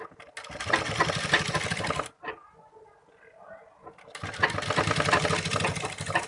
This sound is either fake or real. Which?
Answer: real